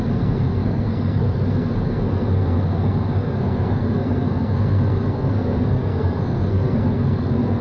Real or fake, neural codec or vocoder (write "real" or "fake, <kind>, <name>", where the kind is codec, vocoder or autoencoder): fake, codec, SNAC